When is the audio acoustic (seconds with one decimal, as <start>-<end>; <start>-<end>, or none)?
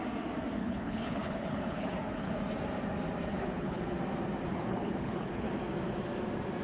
0.0-0.6; 2.3-3.3; 3.8-4.5; 5.5-6.6